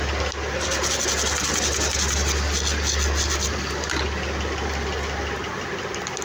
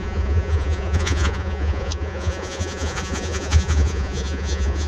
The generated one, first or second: second